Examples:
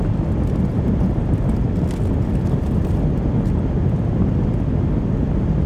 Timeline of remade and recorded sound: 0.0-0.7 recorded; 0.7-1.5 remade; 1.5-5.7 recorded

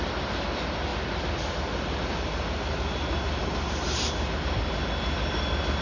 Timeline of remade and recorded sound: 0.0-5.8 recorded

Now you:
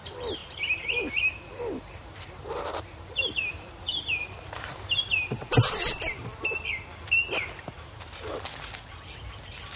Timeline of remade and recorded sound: 0.0-5.8 remade; 5.8-9.4 recorded; 9.4-9.8 remade

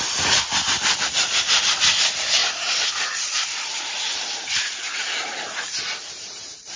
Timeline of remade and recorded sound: 0.0-2.4 recorded; 2.4-6.8 remade

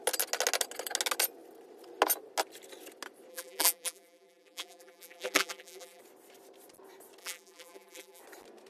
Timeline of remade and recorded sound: 0.0-3.3 recorded; 3.3-6.0 remade; 6.0-7.2 recorded; 7.2-8.2 remade; 8.2-8.7 recorded

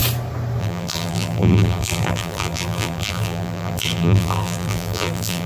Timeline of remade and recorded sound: 0.0-0.6 recorded; 0.6-5.5 remade

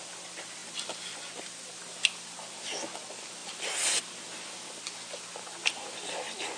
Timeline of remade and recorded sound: 0.0-0.6 recorded; 0.6-2.5 remade; 2.5-6.6 recorded